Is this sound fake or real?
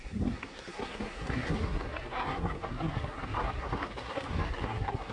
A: fake